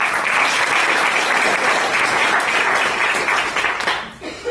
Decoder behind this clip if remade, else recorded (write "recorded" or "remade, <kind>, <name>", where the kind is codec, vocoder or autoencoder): recorded